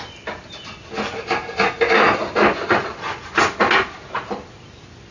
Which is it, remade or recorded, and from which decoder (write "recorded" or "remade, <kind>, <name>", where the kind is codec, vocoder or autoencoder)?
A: recorded